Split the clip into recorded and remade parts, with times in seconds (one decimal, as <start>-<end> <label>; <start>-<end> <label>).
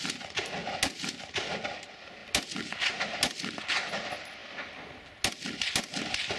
0.0-6.4 recorded